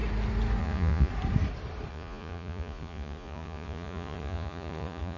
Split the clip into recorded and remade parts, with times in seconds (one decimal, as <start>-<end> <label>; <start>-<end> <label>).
0.0-0.6 recorded; 0.6-1.1 remade; 1.1-1.9 recorded; 1.9-5.2 remade